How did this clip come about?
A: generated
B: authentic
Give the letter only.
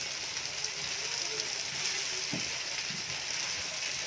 B